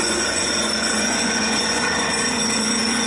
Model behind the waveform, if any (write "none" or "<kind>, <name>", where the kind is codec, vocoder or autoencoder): vocoder, Vocos